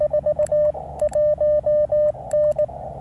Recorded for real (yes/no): yes